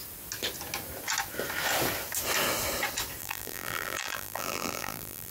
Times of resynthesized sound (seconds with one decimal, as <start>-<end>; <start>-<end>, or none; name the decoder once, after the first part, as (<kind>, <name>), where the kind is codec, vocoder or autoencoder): 3.2-5.3 (vocoder, BigVGAN v2)